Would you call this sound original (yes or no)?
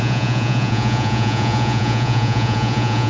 no